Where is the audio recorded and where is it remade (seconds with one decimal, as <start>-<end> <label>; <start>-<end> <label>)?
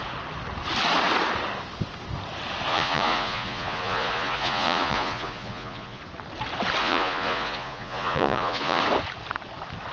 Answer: 0.0-2.7 recorded; 2.7-6.0 remade; 6.0-6.8 recorded; 6.8-8.8 remade; 8.8-9.9 recorded